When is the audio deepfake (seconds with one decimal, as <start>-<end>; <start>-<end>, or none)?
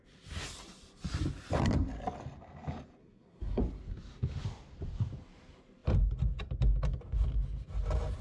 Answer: 3.0-3.6